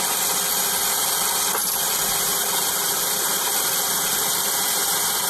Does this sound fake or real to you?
real